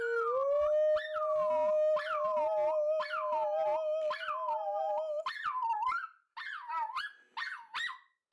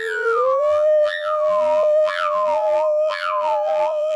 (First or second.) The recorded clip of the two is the first